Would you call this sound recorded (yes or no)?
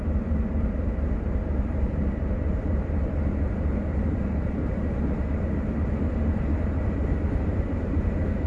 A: no